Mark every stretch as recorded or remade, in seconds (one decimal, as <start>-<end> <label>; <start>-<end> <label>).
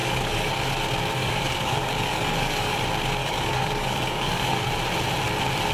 0.0-0.5 remade; 0.5-1.2 recorded; 1.2-2.8 remade; 2.8-3.2 recorded; 3.2-4.7 remade; 4.7-5.7 recorded